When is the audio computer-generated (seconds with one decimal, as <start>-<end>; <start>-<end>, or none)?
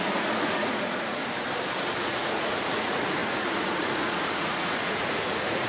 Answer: 0.0-1.2; 2.0-5.7